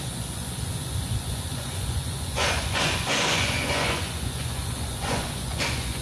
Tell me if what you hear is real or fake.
fake